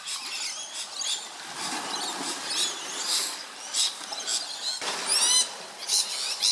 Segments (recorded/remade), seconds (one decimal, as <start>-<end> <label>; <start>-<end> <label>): 0.0-6.5 recorded